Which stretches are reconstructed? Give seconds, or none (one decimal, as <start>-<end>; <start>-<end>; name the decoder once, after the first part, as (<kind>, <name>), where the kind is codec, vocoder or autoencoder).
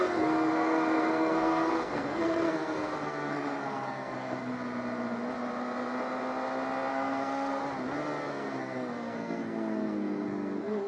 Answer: 0.0-4.5 (codec, SNAC); 6.9-7.6; 8.3-10.9